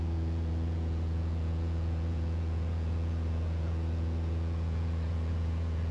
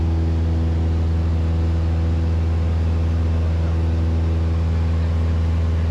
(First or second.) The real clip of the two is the second